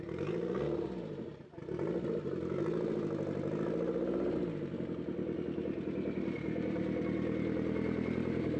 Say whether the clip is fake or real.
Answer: real